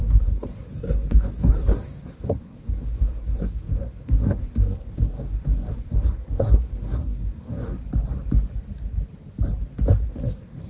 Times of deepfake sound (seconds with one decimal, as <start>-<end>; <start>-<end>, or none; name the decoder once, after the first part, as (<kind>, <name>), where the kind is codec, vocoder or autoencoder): 0.0-7.8 (codec, SNAC); 10.1-10.7